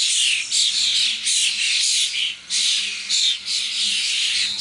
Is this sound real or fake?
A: real